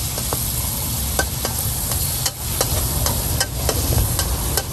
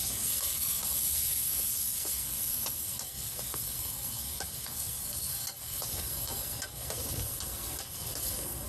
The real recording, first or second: first